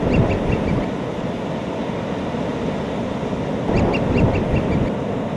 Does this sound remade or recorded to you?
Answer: recorded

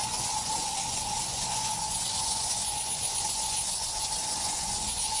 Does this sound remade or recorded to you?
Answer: remade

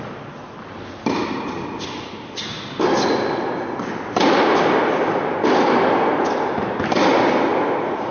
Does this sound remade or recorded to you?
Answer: recorded